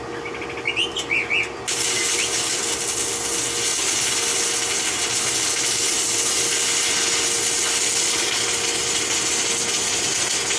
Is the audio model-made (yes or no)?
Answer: no